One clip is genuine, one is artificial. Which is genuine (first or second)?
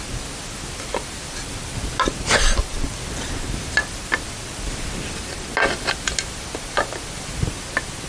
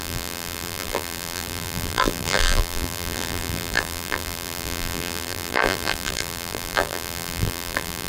first